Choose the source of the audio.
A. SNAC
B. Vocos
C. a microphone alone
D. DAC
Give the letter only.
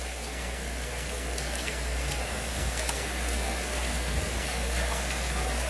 A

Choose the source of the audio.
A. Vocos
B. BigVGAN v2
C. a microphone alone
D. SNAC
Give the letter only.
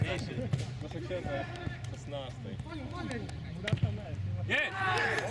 C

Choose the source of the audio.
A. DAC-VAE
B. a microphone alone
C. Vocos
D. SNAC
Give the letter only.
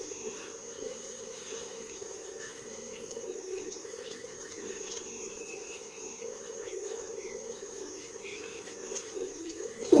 D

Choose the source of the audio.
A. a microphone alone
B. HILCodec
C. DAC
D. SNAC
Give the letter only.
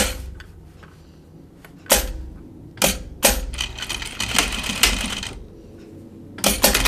A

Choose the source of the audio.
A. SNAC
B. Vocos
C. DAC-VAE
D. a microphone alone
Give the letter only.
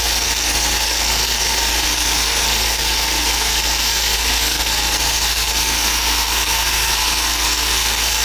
A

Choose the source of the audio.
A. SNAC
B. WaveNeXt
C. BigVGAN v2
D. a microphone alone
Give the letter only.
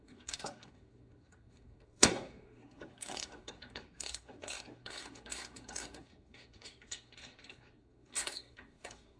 A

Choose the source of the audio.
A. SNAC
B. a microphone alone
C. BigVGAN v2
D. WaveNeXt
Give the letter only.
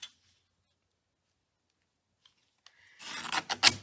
B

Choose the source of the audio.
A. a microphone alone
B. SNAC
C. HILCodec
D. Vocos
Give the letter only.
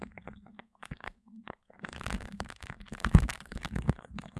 B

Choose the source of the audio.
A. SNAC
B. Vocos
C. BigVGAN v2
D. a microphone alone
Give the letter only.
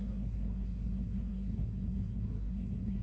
A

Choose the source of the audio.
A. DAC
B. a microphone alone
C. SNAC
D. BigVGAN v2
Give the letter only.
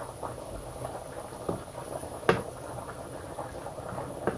B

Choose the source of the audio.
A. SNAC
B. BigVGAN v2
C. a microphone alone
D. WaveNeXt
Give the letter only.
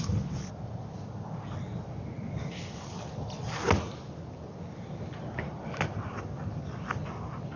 C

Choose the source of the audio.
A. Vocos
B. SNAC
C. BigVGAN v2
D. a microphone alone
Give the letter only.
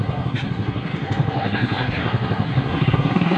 B